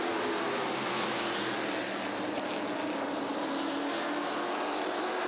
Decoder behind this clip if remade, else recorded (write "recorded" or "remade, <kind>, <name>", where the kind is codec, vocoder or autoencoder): recorded